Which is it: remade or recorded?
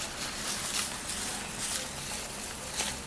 recorded